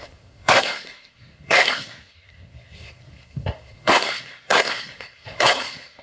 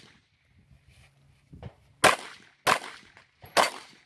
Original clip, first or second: second